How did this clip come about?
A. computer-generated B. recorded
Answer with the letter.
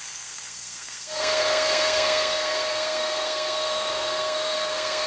A